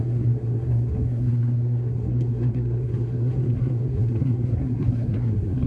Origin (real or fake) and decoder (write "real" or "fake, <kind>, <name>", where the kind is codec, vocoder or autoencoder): fake, codec, SNAC